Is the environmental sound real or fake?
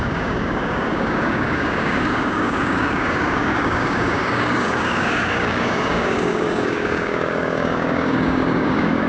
fake